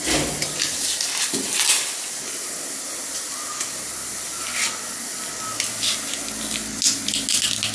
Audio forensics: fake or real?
real